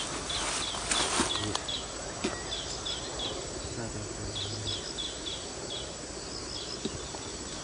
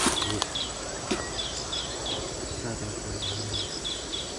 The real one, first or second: first